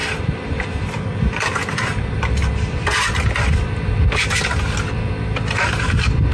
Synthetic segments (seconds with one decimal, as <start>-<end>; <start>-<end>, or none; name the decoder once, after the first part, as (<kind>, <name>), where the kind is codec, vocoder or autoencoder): 0.0-2.2 (vocoder, BigVGAN v2)